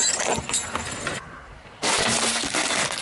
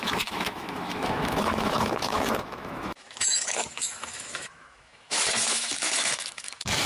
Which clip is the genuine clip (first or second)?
first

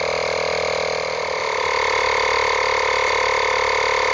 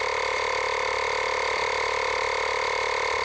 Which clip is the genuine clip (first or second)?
first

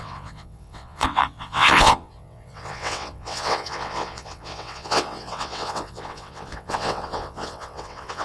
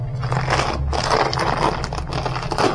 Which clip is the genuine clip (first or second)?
second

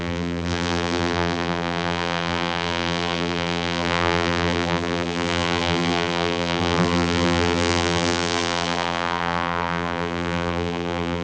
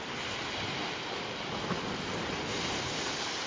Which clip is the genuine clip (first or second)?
second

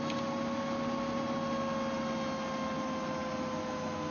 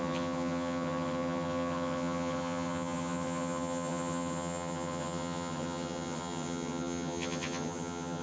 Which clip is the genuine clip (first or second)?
first